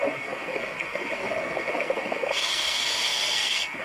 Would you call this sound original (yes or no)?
no